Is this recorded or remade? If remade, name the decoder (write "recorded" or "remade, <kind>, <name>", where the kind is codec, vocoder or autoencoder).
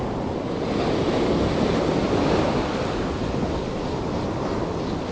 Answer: recorded